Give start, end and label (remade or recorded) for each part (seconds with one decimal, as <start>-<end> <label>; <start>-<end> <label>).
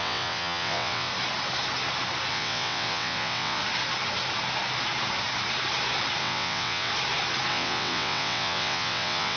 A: 0.0-1.1 remade; 1.1-2.3 recorded; 2.3-3.6 remade; 3.6-6.2 recorded; 6.2-6.9 remade; 6.9-7.5 recorded; 7.5-9.4 remade